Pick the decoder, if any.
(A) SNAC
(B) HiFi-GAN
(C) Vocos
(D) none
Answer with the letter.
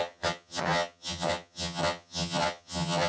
B